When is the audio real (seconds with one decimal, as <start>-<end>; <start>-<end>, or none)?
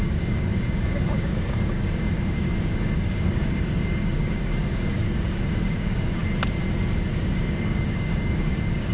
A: 6.2-7.1